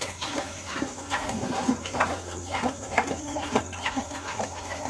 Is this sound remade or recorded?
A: remade